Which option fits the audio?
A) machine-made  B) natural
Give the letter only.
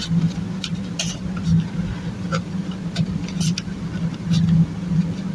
B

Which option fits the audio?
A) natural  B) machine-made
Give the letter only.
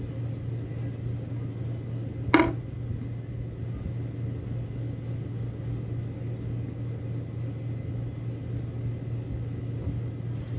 A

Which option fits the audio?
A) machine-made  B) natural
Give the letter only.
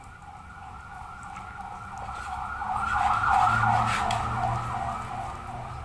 B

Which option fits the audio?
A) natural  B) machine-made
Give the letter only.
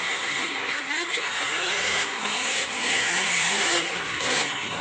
B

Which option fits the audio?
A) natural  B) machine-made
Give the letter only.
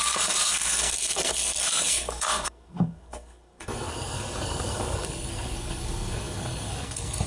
B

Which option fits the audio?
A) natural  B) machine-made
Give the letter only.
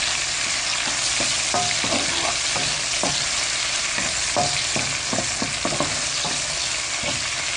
A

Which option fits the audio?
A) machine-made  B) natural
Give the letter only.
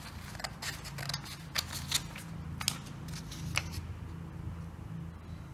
B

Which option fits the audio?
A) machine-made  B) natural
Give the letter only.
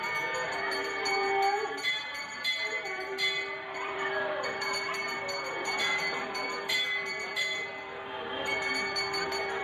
A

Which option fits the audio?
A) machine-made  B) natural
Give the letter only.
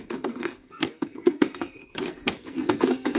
A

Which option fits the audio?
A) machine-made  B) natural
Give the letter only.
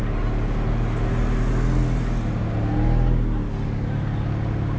B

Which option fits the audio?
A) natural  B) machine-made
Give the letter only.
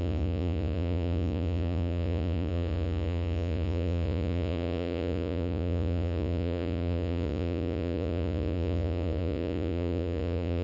B